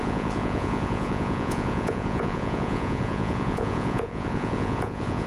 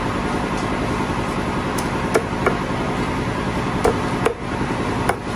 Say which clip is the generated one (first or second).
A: first